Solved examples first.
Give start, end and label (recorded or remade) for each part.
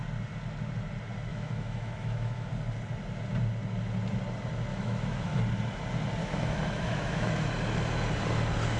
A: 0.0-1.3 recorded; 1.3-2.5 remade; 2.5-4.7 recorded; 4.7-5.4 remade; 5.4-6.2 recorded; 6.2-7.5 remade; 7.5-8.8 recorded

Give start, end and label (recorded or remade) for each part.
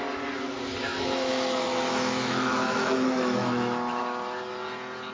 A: 0.0-0.9 recorded; 0.9-4.0 remade; 4.0-5.1 recorded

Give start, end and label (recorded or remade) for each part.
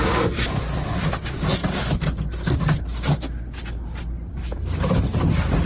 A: 0.0-5.7 recorded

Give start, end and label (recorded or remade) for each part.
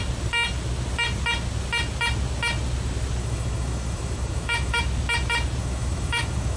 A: 0.0-3.2 recorded; 3.2-4.8 remade; 4.8-5.6 recorded; 5.6-6.6 remade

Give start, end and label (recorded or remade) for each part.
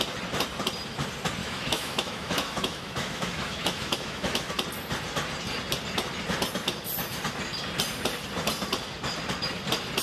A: 0.0-1.4 recorded; 1.4-4.5 remade; 4.5-10.0 recorded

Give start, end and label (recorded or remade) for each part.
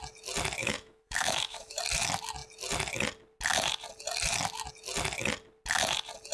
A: 0.0-0.6 recorded; 0.6-1.8 remade; 1.8-6.3 recorded